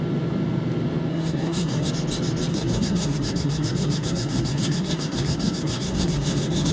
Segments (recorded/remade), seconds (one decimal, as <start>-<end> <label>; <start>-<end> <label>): 0.0-1.1 recorded; 1.1-1.9 remade; 1.9-2.5 recorded; 2.5-6.7 remade